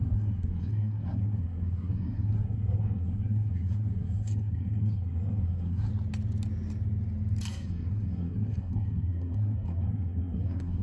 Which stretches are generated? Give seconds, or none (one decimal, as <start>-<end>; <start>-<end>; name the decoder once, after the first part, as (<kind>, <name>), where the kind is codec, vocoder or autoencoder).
0.0-5.9 (codec, SNAC); 7.5-10.8